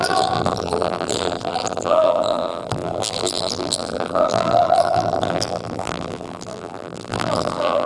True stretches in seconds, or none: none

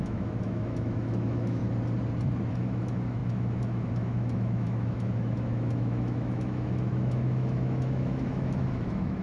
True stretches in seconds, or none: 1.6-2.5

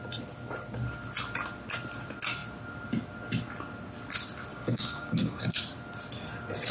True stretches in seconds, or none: 0.0-4.5; 5.4-6.7